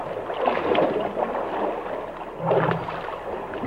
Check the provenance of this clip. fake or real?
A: real